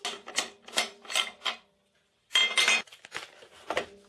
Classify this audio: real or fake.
real